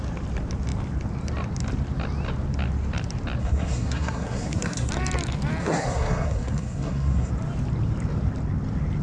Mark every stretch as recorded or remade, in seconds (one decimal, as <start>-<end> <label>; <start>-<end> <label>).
0.0-3.4 recorded; 3.4-4.9 remade; 4.9-5.6 recorded; 5.6-7.3 remade; 7.3-9.0 recorded